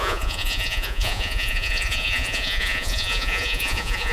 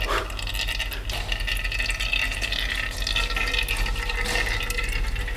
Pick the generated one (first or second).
first